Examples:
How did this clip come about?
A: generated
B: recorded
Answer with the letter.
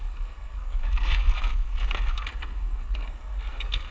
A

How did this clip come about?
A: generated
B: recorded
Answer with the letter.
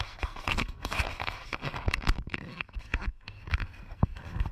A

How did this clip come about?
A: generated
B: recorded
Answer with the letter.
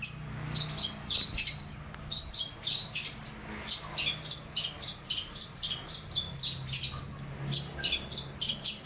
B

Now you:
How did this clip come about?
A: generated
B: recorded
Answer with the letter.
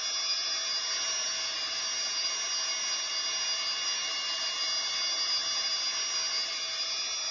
B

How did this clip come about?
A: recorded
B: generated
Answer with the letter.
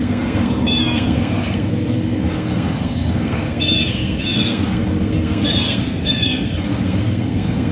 B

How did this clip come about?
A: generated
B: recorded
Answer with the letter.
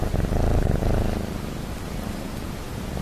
B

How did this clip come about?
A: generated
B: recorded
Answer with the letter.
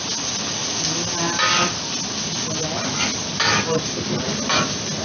B